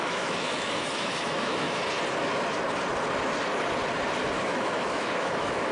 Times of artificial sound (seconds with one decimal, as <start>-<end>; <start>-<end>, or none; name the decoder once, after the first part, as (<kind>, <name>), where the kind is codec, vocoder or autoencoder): 0.0-1.8 (autoencoder, DAC-VAE); 4.4-5.7